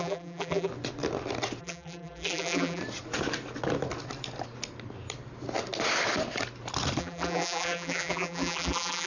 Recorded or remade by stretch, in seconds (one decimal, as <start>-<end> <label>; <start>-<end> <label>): 0.0-0.7 remade; 0.7-1.6 recorded; 1.6-2.8 remade; 2.8-7.0 recorded; 7.0-9.1 remade